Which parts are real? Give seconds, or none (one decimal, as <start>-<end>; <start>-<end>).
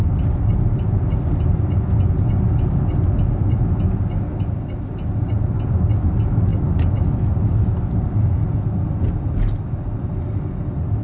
0.0-11.0